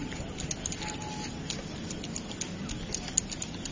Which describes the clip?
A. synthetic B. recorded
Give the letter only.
B